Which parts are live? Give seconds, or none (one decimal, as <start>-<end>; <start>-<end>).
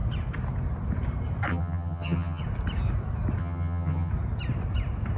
0.0-1.5; 2.4-3.4; 4.1-5.2